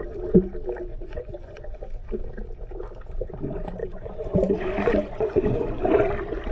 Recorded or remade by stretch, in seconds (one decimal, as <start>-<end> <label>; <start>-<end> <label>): 0.0-0.9 recorded; 0.9-1.6 remade; 1.6-3.8 recorded; 3.8-5.7 remade; 5.7-6.5 recorded